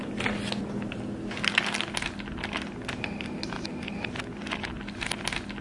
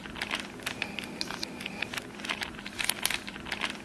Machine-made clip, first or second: second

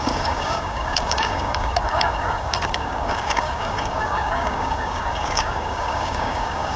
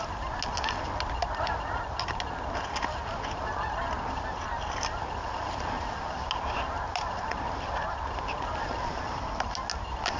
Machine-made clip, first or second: first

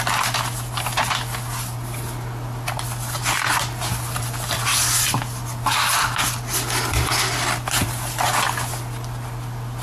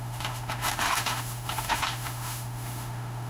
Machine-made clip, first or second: second